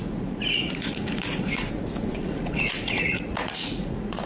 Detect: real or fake fake